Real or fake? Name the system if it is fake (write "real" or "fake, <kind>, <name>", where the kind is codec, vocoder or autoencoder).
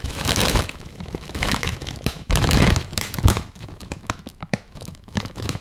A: fake, autoencoder, DAC-VAE